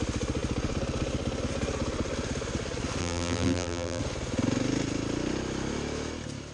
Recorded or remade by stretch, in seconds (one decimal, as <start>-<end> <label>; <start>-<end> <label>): 0.0-3.0 recorded; 3.0-4.0 remade; 4.0-6.5 recorded